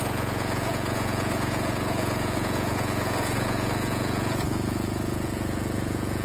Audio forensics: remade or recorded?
remade